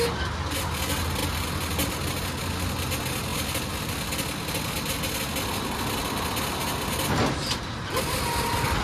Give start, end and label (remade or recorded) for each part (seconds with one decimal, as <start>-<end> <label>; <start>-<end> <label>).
0.0-8.8 recorded

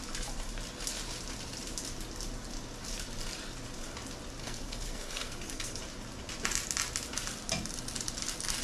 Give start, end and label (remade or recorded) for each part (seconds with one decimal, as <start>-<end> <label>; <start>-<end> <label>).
0.0-4.4 recorded; 4.4-5.8 remade; 5.8-8.6 recorded

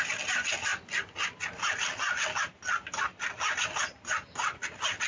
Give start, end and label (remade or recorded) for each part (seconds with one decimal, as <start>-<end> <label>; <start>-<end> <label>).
0.0-5.1 recorded

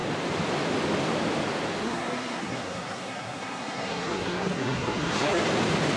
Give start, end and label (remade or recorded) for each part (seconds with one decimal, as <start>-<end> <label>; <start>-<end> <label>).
0.0-1.8 recorded; 1.8-5.4 remade; 5.4-6.0 recorded

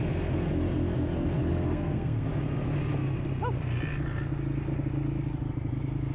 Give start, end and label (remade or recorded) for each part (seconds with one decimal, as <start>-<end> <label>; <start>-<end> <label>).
0.0-1.5 recorded; 1.5-2.3 remade; 2.3-6.1 recorded

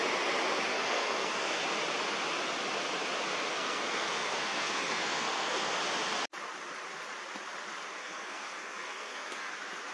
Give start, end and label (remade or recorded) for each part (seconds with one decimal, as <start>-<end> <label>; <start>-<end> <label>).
0.0-0.7 recorded; 0.7-1.6 remade; 1.6-3.5 recorded; 3.5-5.8 remade; 5.8-8.0 recorded; 8.0-9.5 remade; 9.5-9.9 recorded

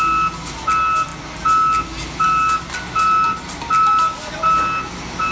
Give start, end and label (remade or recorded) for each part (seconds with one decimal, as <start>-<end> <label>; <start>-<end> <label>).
0.0-5.3 recorded

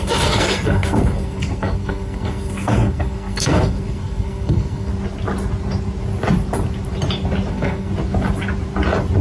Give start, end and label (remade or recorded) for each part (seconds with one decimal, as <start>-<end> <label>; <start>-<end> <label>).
0.0-4.9 remade; 4.9-7.5 recorded; 7.5-7.9 remade; 7.9-9.2 recorded